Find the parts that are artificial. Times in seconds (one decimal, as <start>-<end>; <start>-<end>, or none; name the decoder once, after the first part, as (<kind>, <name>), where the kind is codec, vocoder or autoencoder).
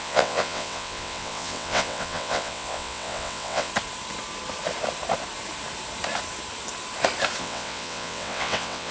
0.0-3.7 (vocoder, WaveNeXt); 7.4-8.9